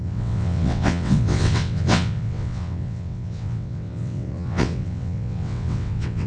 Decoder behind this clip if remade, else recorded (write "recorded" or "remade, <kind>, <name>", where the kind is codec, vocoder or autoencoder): remade, vocoder, WaveNeXt